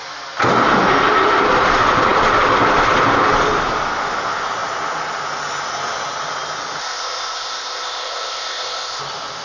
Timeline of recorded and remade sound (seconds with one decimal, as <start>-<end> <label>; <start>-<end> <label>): 0.0-6.8 recorded; 6.8-9.0 remade; 9.0-9.4 recorded